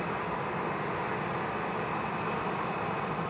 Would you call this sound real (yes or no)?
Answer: yes